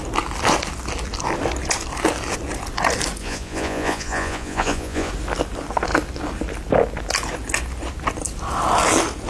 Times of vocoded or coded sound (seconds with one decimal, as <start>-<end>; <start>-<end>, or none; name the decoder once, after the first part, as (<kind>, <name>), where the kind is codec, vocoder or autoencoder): 3.2-5.1 (vocoder, Vocos)